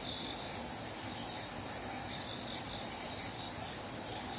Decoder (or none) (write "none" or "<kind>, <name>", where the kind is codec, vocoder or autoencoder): none